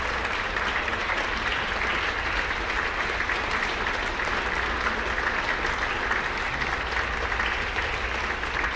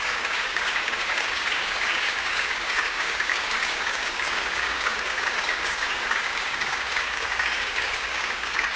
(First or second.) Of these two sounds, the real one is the first